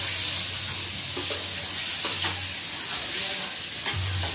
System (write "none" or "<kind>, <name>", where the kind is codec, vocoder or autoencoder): none